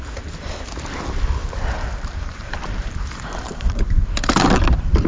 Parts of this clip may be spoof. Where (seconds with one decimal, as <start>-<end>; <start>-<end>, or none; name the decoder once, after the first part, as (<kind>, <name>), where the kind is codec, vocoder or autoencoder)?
1.4-4.5 (vocoder, BigVGAN v2)